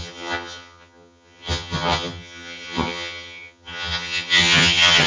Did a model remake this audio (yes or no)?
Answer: yes